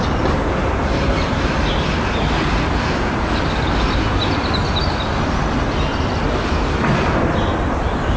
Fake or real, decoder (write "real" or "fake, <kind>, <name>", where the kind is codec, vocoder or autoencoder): real